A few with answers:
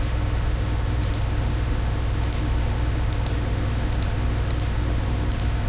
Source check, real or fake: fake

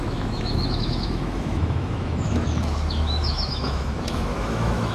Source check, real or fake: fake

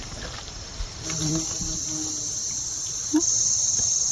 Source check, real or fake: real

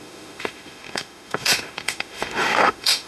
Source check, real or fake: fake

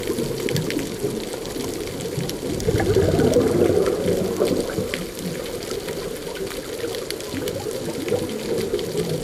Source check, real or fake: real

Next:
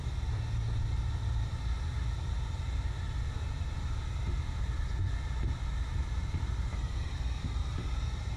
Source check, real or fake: real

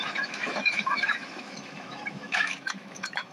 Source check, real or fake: fake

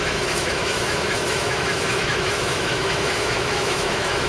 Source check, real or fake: fake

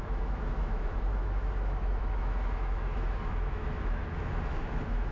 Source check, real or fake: fake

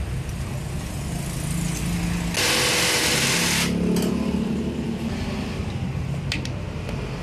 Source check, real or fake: real